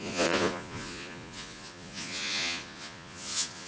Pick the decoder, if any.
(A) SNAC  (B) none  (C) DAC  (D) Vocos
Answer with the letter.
D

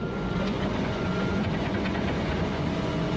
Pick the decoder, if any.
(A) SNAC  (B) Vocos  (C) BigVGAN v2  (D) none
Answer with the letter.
B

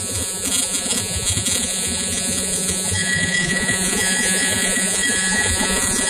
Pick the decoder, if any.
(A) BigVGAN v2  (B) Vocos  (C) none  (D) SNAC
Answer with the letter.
B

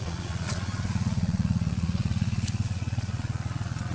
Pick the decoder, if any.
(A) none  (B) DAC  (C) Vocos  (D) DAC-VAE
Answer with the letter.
C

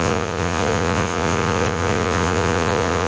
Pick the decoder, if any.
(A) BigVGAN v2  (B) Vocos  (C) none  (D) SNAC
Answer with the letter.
B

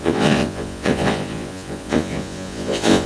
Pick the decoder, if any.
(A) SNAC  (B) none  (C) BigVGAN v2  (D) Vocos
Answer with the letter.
D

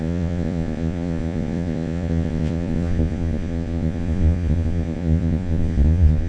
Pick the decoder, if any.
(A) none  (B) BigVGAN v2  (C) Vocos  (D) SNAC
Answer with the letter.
C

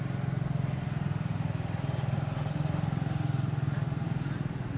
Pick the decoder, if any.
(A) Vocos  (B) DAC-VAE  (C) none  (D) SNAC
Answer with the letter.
C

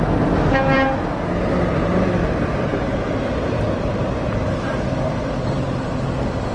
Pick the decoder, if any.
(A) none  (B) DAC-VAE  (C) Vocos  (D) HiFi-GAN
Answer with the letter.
A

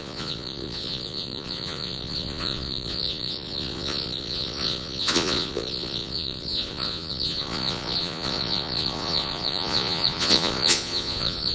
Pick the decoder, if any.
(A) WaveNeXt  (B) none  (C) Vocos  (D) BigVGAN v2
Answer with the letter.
C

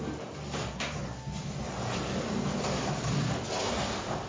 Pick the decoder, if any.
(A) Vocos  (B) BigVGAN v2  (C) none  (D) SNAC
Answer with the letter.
C